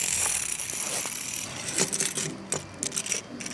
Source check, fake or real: real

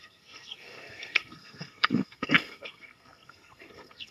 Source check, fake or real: fake